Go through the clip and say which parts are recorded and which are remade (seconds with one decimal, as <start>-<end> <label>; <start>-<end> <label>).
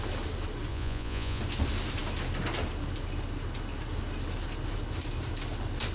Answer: 0.0-0.7 recorded; 0.7-1.4 remade; 1.4-5.9 recorded